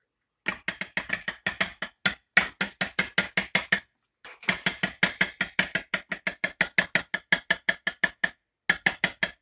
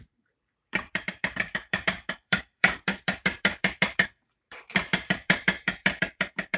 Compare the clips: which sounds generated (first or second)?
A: second